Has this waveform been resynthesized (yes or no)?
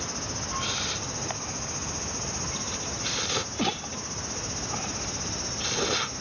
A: no